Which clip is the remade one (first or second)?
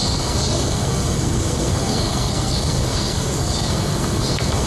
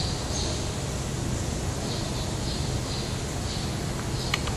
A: first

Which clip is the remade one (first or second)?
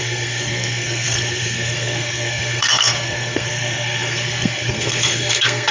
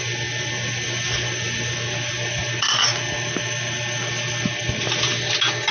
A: first